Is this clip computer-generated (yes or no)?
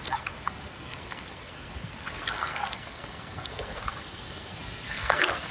yes